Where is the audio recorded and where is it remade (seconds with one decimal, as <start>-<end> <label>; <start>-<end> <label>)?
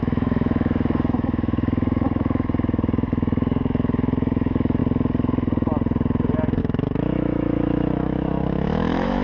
0.0-4.8 remade; 4.8-6.6 recorded; 6.6-9.2 remade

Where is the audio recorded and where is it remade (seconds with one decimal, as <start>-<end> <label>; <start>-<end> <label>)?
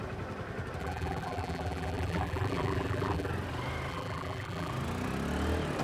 0.0-0.8 recorded; 0.8-3.3 remade; 3.3-3.9 recorded; 3.9-4.7 remade; 4.7-5.8 recorded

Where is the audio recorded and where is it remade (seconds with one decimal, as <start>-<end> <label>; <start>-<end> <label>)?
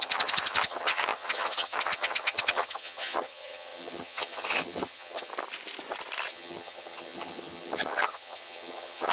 0.0-5.3 remade; 5.3-6.3 recorded; 6.3-9.1 remade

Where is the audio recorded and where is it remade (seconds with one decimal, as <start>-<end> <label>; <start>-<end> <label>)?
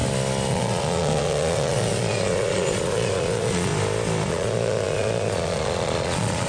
0.0-0.5 recorded; 0.5-3.7 remade; 3.7-4.3 recorded; 4.3-6.5 remade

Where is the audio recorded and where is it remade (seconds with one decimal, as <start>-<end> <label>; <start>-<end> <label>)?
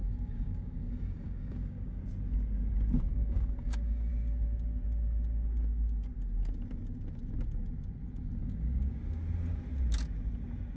0.0-2.0 remade; 2.0-3.1 recorded; 3.1-4.1 remade; 4.1-8.4 recorded; 8.4-8.9 remade; 8.9-10.8 recorded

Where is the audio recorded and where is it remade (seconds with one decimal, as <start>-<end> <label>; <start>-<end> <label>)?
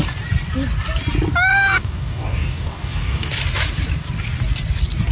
0.0-1.5 recorded; 1.5-3.3 remade; 3.3-5.1 recorded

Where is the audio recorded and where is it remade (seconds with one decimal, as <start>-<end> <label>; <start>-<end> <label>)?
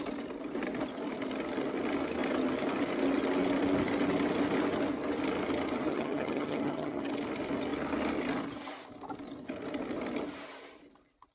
0.0-5.9 recorded; 5.9-7.1 remade; 7.1-11.3 recorded